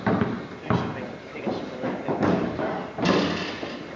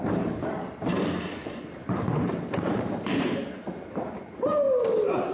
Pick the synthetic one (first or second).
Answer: second